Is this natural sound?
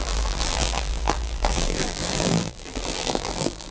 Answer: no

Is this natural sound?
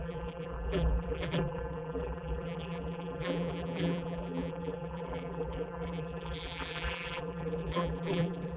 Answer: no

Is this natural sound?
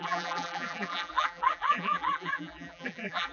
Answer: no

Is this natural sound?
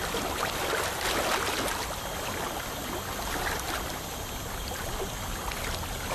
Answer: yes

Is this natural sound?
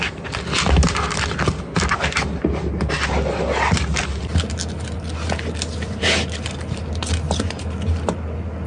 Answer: yes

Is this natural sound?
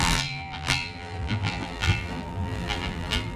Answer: no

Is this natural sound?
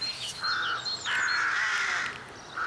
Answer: yes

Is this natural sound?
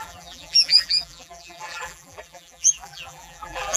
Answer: no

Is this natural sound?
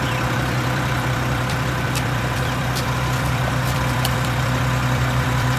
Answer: no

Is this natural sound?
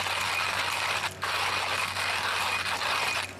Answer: yes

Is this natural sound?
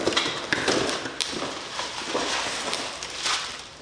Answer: no